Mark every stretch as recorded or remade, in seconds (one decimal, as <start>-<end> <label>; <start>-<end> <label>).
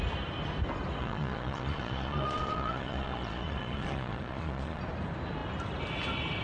0.0-1.0 recorded; 1.0-4.8 remade; 4.8-6.4 recorded